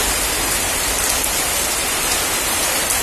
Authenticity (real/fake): real